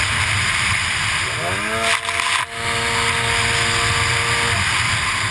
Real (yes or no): yes